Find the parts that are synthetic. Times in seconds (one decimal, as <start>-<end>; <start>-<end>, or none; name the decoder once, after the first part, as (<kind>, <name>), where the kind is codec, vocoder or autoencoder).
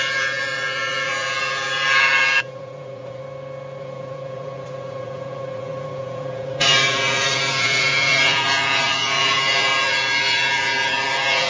0.0-3.2 (vocoder, Vocos); 3.8-11.5